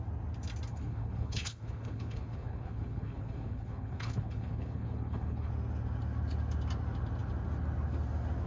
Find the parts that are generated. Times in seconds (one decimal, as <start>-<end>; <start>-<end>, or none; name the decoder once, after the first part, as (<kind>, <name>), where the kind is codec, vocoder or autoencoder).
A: 0.7-5.5 (codec, HILCodec)